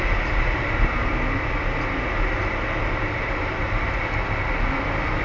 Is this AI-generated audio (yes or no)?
no